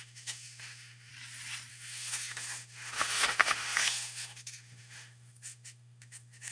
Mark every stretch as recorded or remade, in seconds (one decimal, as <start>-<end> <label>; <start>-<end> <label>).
0.0-1.1 remade; 1.1-1.7 recorded; 1.7-6.5 remade